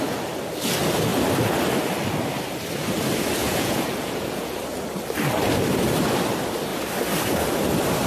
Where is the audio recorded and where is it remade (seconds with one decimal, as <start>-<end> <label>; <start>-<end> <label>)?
0.0-3.4 recorded; 3.4-4.6 remade; 4.6-8.1 recorded